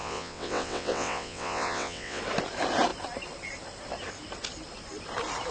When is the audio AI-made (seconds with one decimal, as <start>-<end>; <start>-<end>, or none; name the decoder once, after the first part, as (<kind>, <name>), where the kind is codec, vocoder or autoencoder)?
0.0-2.2 (vocoder, WaveNeXt)

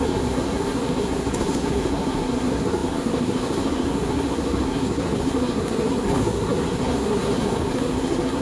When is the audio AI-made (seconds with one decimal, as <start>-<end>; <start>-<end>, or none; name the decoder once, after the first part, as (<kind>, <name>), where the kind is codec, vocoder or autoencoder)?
0.0-8.4 (codec, SNAC)